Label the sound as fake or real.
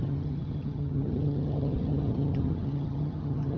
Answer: fake